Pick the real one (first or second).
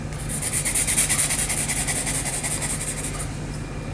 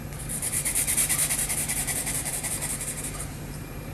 first